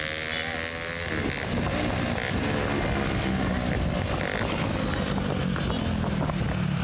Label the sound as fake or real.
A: real